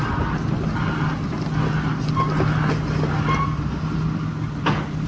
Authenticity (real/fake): real